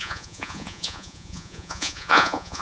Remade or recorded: remade